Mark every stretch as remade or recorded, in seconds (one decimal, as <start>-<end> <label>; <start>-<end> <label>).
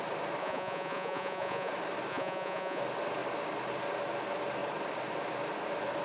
0.0-0.4 recorded; 0.4-1.7 remade; 1.7-2.1 recorded; 2.1-2.8 remade; 2.8-6.0 recorded